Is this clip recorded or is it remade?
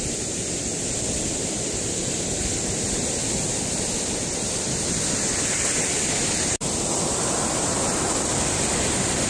recorded